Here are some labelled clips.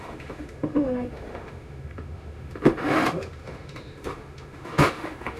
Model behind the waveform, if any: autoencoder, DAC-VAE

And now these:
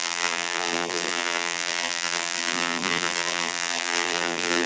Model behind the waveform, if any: vocoder, BigVGAN v2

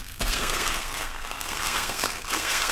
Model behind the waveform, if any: codec, SNAC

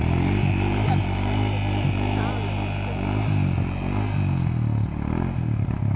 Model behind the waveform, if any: none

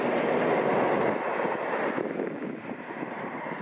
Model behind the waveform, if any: none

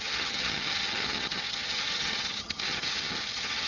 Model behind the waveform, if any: vocoder, HiFi-GAN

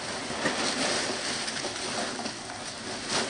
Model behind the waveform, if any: none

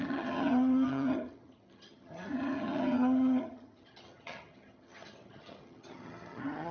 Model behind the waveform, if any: vocoder, HiFi-GAN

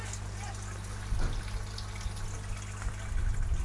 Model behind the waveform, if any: none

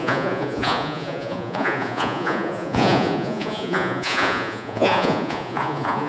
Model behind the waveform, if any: vocoder, Vocos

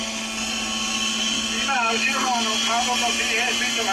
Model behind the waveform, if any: none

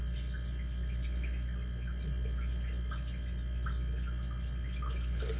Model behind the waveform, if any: none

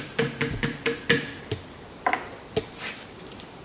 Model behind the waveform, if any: none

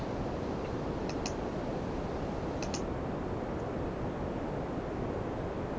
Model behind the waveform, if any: none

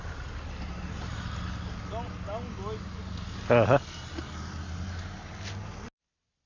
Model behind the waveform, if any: none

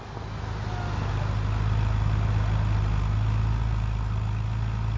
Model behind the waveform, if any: none